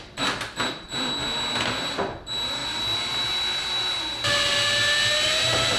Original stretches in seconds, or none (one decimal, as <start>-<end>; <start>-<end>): 0.0-5.8